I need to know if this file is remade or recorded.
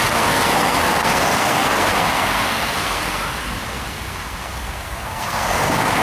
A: remade